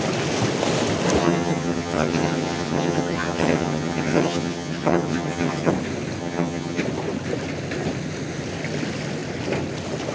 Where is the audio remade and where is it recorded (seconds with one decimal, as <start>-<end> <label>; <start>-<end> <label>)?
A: 0.0-1.2 recorded; 1.2-5.7 remade; 5.7-6.2 recorded; 6.2-6.8 remade; 6.8-10.1 recorded